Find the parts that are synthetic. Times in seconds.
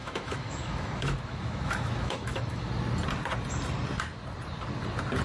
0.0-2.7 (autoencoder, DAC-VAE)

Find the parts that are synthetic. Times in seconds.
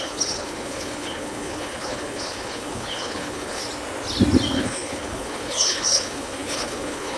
0.0-3.6 (codec, HILCodec); 4.5-7.2